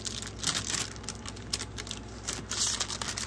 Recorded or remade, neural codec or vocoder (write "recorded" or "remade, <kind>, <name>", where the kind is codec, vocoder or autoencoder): recorded